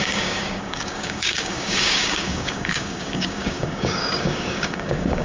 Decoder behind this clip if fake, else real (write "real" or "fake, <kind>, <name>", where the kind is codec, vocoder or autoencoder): fake, codec, DAC